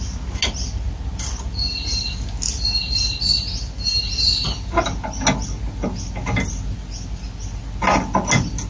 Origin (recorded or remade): recorded